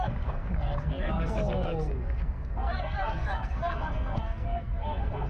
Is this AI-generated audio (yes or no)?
yes